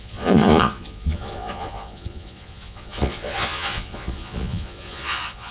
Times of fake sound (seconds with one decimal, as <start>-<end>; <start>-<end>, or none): 0.0-5.5